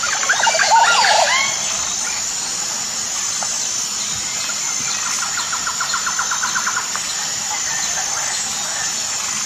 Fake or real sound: real